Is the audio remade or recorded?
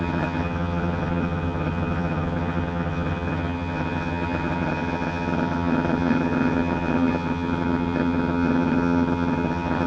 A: remade